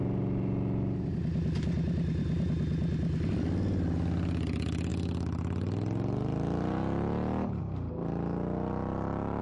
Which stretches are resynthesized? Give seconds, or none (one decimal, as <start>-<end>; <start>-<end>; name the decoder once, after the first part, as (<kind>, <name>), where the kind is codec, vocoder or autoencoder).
none